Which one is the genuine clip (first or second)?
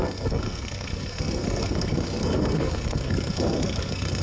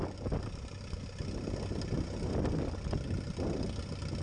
second